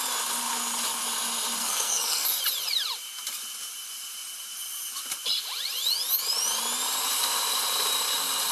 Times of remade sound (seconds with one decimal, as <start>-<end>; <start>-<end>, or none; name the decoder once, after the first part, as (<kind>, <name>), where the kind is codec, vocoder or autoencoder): 1.6-2.4 (codec, SNAC)